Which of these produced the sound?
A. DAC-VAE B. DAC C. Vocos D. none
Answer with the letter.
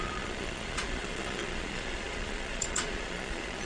C